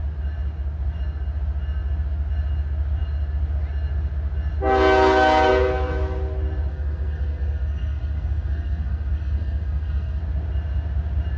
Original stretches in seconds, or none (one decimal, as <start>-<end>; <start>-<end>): 0.0-6.7; 10.2-11.4